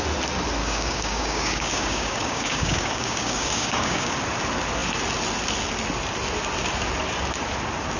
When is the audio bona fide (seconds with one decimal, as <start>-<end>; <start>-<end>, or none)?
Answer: 0.0-0.6; 4.1-8.0